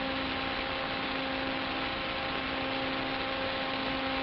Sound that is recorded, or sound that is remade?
remade